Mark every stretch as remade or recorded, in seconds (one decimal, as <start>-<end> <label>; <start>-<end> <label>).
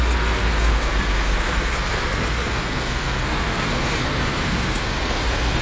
0.0-5.6 remade